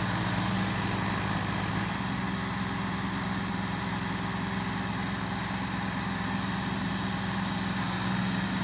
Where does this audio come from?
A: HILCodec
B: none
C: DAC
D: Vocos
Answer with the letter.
B